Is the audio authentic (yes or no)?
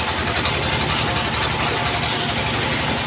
yes